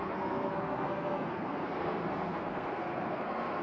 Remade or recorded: remade